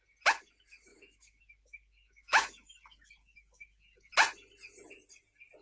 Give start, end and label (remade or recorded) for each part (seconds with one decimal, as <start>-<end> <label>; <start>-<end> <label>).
0.0-0.9 recorded; 0.9-4.1 remade; 4.1-5.6 recorded

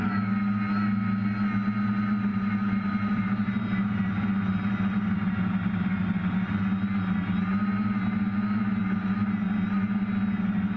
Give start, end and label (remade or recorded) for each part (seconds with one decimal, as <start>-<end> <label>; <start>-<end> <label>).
0.0-2.3 recorded; 2.3-6.6 remade; 6.6-10.8 recorded

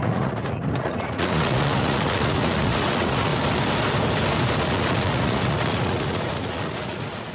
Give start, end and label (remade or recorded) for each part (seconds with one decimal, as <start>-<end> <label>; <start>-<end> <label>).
0.0-3.3 remade; 3.3-4.6 recorded; 4.6-7.3 remade